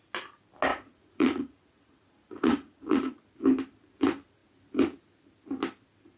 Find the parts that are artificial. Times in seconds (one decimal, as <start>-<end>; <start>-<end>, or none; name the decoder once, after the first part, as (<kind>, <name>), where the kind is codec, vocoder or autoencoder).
0.7-3.2 (vocoder, Vocos)